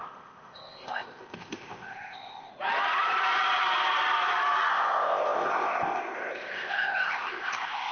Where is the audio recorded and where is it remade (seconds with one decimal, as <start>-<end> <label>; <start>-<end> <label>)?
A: 0.0-2.5 remade; 2.5-4.7 recorded; 4.7-7.9 remade